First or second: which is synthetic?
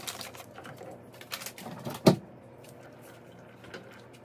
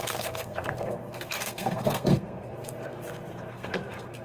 second